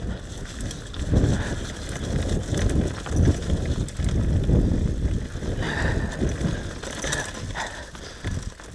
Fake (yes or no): no